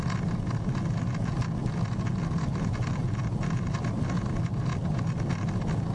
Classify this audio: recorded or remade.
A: recorded